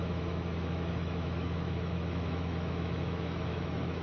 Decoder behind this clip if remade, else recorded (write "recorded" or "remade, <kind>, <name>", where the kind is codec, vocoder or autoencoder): remade, autoencoder, DAC-VAE